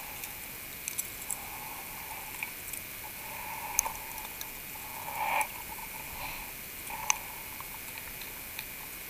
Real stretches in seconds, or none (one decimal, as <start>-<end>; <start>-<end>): 0.0-9.1